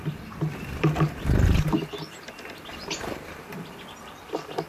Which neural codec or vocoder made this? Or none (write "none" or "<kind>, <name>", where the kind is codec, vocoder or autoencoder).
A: vocoder, BigVGAN v2